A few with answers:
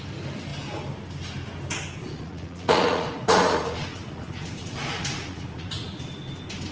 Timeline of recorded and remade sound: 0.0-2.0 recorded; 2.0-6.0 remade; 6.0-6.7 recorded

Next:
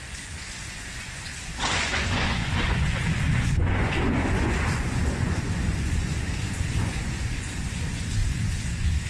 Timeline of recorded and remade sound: 0.0-9.1 remade

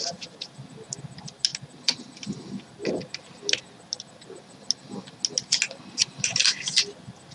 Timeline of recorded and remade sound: 0.0-7.3 recorded

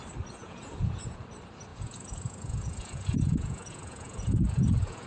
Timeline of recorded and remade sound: 0.0-0.4 recorded; 0.4-1.2 remade; 1.2-1.7 recorded; 1.7-5.1 remade

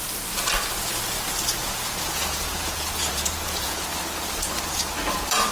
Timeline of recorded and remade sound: 0.0-1.6 recorded; 1.6-3.9 remade; 3.9-5.5 recorded

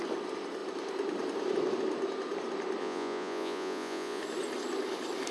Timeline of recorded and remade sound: 0.0-2.8 recorded; 2.8-4.2 remade; 4.2-5.3 recorded